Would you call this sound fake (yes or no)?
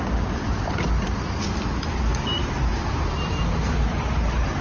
no